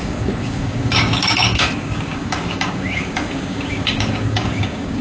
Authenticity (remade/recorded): remade